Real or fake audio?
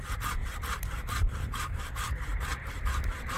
fake